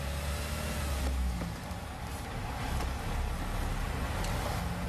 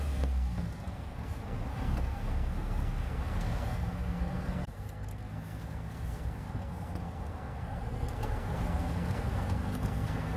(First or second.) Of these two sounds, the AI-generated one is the second